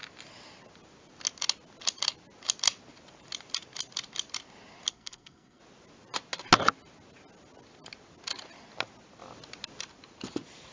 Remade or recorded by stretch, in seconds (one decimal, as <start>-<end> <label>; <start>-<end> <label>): 0.0-4.9 recorded; 4.9-5.6 remade; 5.6-10.7 recorded